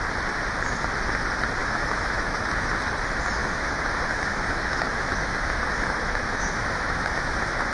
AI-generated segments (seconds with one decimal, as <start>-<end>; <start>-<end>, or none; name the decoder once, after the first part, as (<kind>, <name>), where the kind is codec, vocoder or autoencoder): 1.6-2.7 (autoencoder, DAC-VAE); 3.4-7.7